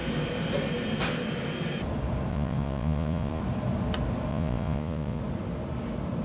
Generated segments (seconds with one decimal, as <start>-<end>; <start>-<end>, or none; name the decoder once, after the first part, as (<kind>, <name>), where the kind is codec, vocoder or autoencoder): 2.3-3.4 (vocoder, Vocos); 4.3-5.2